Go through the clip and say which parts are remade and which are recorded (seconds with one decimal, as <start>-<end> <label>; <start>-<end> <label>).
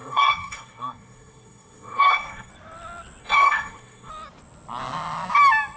0.0-2.5 remade; 2.5-3.2 recorded; 3.2-4.1 remade; 4.1-5.8 recorded